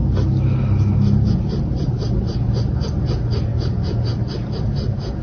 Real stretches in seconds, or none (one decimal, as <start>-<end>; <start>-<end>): 0.0-3.5; 4.0-5.2